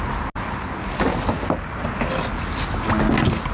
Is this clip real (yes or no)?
yes